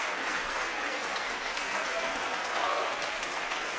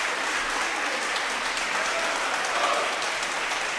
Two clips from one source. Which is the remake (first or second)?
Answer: first